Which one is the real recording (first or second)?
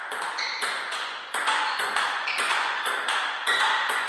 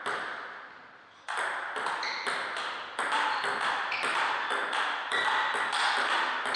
second